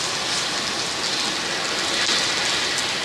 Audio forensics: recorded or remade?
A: recorded